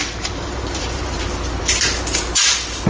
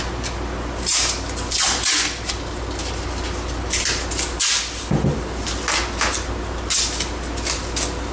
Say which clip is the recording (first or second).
second